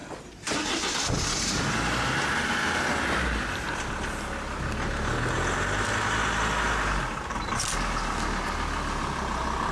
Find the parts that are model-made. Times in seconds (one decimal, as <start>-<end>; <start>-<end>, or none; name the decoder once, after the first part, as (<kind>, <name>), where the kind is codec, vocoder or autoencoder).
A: none